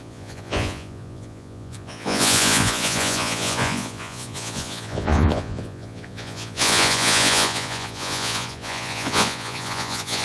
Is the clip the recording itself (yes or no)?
no